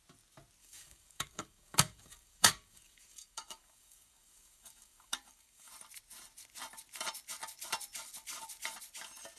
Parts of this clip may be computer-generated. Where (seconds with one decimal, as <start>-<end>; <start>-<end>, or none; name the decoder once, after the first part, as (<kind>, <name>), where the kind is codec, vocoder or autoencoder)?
0.6-5.7 (codec, DAC)